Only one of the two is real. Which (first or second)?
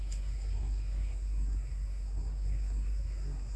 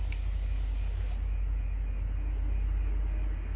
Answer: second